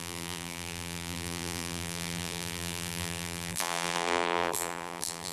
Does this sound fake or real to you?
fake